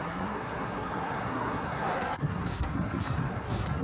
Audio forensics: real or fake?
fake